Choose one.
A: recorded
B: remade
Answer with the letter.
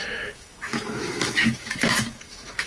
B